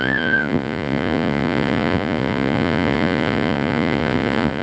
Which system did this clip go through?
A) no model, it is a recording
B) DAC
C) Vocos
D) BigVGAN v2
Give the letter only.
C